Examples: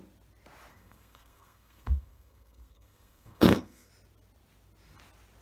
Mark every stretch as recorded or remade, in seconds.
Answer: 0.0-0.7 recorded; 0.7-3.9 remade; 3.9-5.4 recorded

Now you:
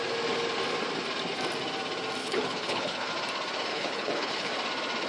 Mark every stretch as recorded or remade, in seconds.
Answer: 0.0-2.2 recorded; 2.2-3.1 remade; 3.1-3.7 recorded; 3.7-4.5 remade; 4.5-5.1 recorded

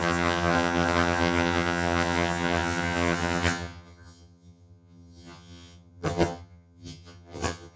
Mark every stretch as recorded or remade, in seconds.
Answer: 0.0-7.8 remade

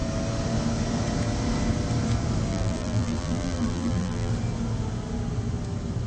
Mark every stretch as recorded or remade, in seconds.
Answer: 0.0-2.5 recorded; 2.5-4.3 remade; 4.3-6.1 recorded